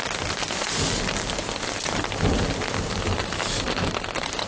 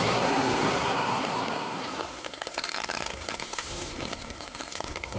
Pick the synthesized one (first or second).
second